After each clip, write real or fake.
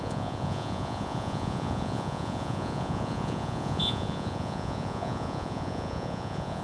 fake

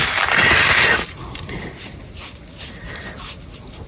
real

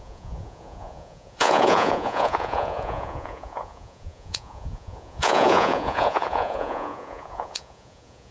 fake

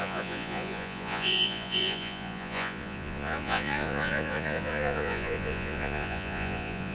fake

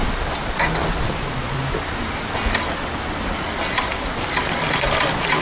real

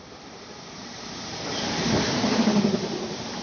real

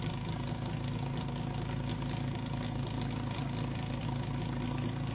real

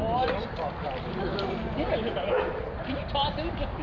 real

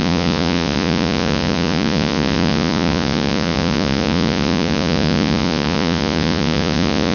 fake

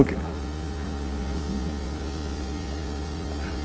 fake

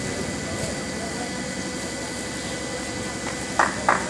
real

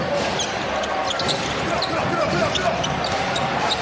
real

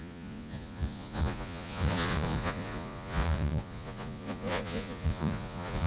fake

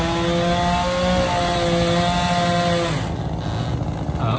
real